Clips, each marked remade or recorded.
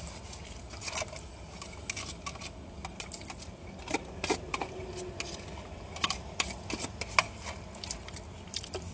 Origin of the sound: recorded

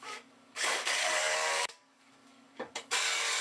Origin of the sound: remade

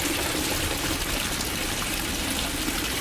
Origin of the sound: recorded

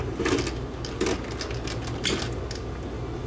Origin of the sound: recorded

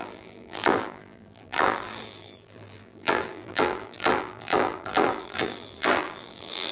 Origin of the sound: remade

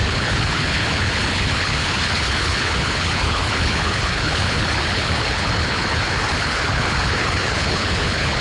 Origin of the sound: remade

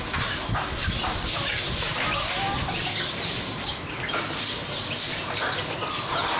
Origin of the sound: recorded